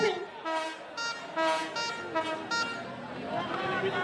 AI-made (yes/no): no